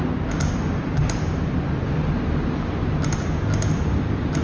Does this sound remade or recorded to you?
recorded